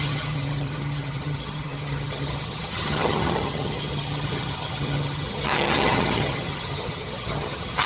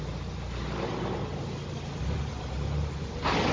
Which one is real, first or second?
second